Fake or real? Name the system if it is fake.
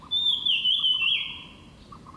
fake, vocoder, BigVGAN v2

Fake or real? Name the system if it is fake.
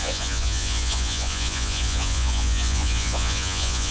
fake, vocoder, Vocos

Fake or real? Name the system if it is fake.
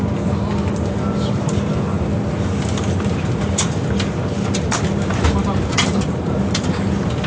real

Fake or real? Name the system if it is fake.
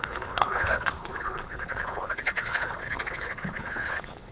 fake, codec, HILCodec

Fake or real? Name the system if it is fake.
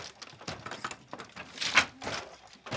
real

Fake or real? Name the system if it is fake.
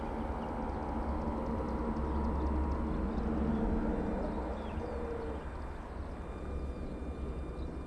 real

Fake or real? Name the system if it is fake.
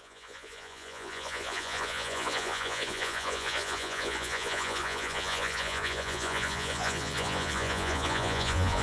fake, vocoder, Vocos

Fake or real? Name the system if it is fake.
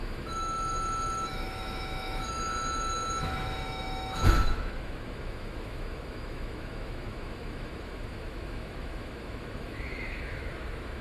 fake, autoencoder, DAC-VAE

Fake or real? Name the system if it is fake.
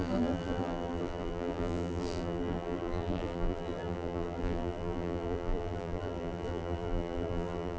fake, vocoder, BigVGAN v2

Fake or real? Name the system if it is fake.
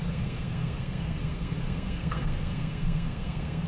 fake, codec, SNAC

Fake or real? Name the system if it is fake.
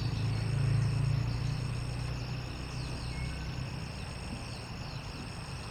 real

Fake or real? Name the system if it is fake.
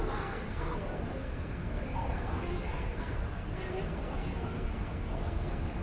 fake, codec, SNAC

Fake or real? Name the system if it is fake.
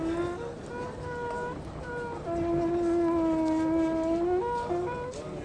real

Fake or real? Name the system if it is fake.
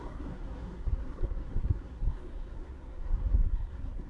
fake, codec, SNAC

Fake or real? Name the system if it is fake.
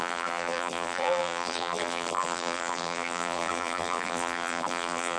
fake, vocoder, BigVGAN v2